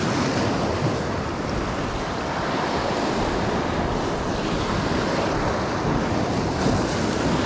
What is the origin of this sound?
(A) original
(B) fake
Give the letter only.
A